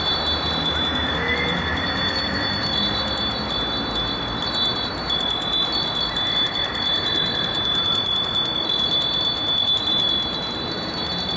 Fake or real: real